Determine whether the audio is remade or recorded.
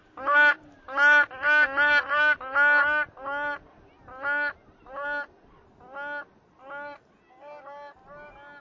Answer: recorded